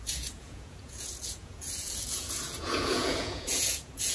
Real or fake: fake